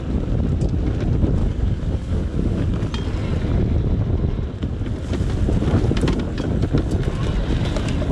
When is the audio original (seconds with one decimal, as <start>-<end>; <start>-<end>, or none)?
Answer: 0.0-1.4; 2.7-8.1